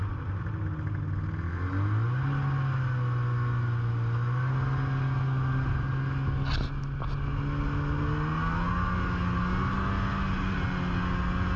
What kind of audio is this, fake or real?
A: real